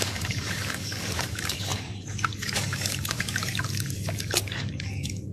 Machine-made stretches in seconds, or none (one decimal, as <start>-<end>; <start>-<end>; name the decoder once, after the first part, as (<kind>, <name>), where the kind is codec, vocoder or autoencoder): 0.0-5.3 (codec, DAC)